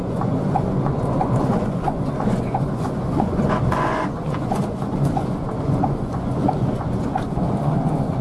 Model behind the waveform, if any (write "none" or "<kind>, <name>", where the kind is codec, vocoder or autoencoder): vocoder, Vocos